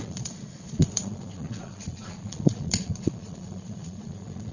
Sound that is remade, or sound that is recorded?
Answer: remade